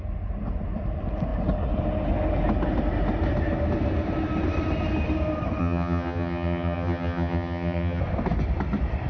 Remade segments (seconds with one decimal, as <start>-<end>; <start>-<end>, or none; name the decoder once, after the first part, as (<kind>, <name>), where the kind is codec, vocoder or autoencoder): 5.6-8.0 (vocoder, HiFi-GAN)